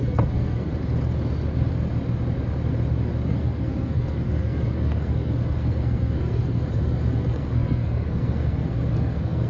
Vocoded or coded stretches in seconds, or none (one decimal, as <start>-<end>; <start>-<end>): 0.0-0.7; 3.3-9.5